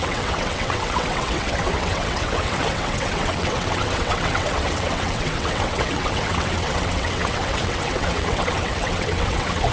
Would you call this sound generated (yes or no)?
yes